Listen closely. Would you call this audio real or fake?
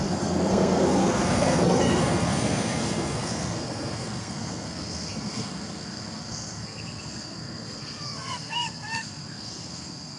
fake